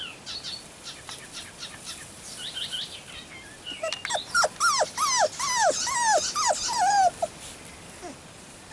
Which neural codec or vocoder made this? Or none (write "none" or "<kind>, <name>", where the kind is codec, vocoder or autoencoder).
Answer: none